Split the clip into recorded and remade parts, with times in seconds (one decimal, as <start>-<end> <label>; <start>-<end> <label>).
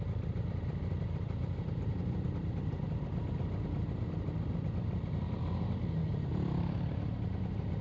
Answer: 0.0-6.0 recorded; 6.0-6.5 remade; 6.5-7.8 recorded